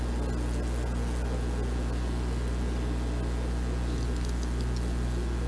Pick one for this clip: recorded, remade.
recorded